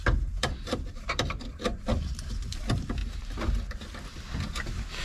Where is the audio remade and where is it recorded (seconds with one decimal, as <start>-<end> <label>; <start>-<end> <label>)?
0.0-3.0 remade; 3.0-4.5 recorded; 4.5-5.0 remade